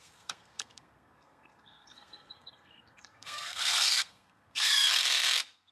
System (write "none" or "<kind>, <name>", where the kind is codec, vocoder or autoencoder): codec, SNAC